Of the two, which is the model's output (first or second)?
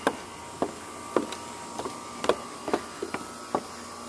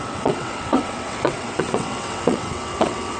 second